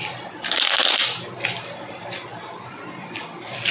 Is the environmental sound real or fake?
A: real